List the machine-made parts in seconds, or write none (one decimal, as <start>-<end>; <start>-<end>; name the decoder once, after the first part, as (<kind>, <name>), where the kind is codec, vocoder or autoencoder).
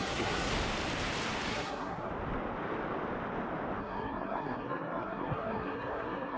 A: 0.0-0.5 (codec, SNAC); 1.5-2.1; 3.8-6.4